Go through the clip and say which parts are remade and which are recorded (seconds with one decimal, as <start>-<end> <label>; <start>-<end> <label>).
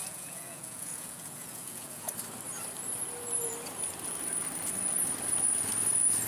0.0-2.1 remade; 2.1-6.3 recorded